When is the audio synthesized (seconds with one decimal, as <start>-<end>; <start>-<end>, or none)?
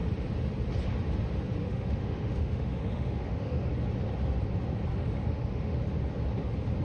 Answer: 1.6-3.7; 4.9-5.8